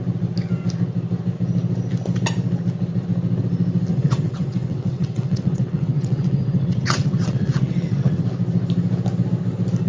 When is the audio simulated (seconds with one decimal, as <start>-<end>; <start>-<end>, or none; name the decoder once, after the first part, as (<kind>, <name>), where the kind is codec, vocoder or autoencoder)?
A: 3.9-8.2 (vocoder, WaveNeXt)